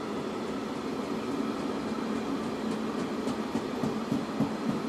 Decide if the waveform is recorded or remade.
recorded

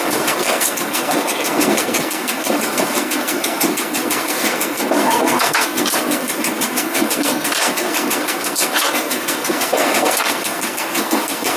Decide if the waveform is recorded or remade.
remade